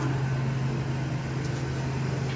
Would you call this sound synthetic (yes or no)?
no